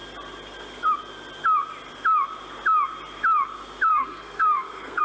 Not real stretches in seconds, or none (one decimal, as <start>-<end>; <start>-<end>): 3.9-5.0

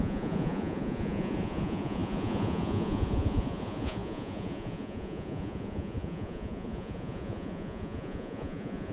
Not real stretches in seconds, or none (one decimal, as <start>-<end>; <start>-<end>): 0.0-8.9